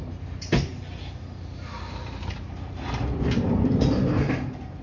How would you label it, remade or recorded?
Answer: recorded